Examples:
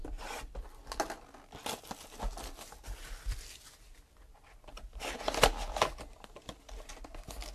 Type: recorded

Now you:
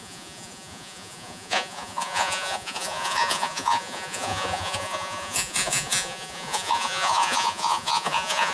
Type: remade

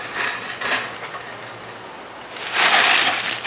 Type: recorded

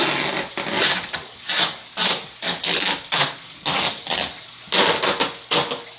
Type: recorded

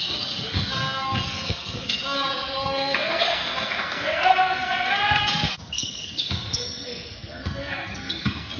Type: remade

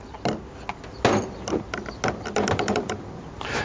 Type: recorded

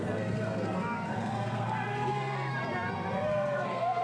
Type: remade